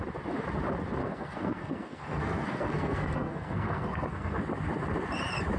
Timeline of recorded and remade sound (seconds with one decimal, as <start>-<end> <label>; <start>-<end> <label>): 0.0-1.0 recorded; 1.0-4.4 remade; 4.4-5.6 recorded